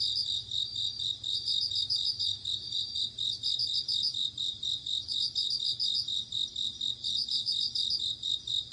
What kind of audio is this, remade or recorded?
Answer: remade